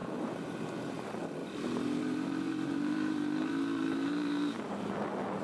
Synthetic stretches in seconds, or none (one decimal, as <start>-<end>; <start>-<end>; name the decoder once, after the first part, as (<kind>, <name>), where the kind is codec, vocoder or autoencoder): 0.0-0.6 (vocoder, BigVGAN v2); 1.4-4.6